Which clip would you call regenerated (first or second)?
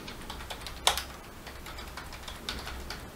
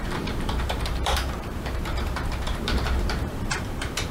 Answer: second